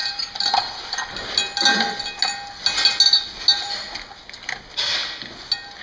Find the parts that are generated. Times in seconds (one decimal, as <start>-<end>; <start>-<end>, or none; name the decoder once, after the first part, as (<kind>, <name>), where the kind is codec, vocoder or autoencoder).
none